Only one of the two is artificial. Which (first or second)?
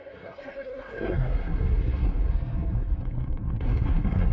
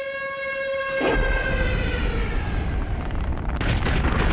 first